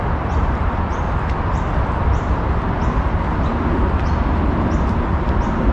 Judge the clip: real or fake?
fake